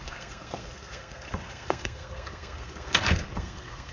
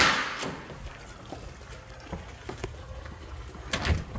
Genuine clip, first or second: second